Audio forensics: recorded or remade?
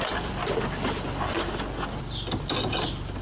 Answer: recorded